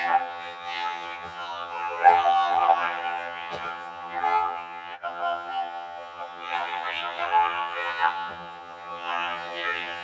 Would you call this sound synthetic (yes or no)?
yes